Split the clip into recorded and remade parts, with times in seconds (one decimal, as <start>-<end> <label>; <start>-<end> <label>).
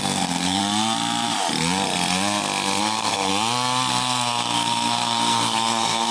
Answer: 0.0-0.6 remade; 0.6-2.8 recorded; 2.8-3.3 remade; 3.3-3.9 recorded; 3.9-6.1 remade